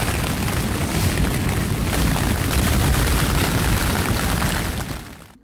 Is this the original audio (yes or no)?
yes